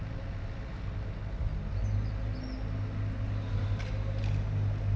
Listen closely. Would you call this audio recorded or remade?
recorded